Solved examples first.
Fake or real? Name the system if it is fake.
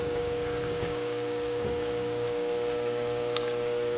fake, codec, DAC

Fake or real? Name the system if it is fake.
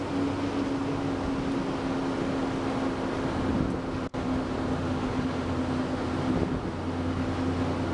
real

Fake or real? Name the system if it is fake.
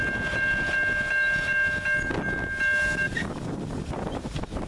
real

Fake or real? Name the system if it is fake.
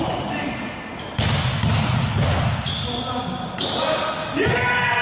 real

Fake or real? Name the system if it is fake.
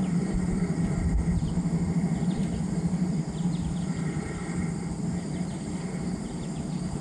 fake, vocoder, BigVGAN v2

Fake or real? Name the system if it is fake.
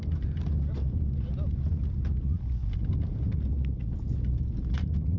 real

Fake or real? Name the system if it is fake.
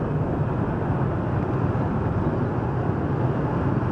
real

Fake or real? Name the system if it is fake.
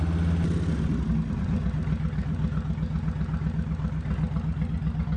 real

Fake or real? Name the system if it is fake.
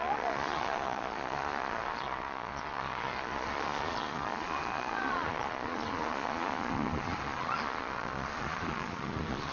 fake, vocoder, Vocos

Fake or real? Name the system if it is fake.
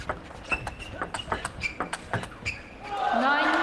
real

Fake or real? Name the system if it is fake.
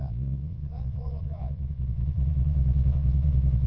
fake, vocoder, Vocos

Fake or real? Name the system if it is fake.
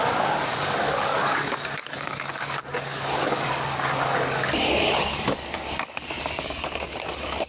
fake, codec, DAC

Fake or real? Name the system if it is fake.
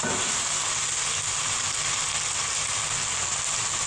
real